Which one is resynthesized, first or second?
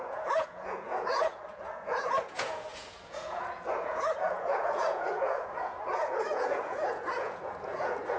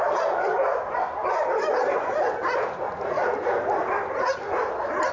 first